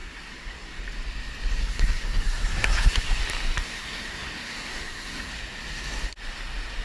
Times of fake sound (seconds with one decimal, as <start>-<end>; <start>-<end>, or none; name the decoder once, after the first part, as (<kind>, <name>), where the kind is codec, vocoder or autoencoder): 0.0-0.8 (codec, SNAC); 1.6-3.2; 3.6-5.3